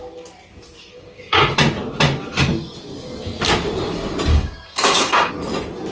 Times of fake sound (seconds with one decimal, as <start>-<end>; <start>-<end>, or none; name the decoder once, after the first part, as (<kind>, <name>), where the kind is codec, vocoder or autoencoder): 0.9-1.4 (codec, DAC); 4.3-5.3